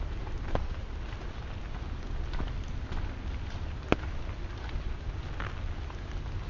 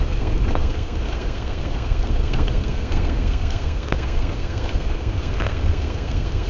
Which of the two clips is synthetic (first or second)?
second